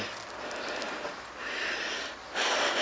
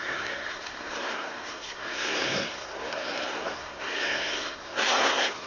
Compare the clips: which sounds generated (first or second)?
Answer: second